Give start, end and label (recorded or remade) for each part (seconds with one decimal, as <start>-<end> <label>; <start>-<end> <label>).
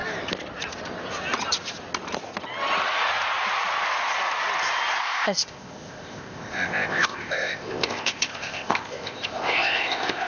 0.0-5.0 recorded; 5.0-10.3 remade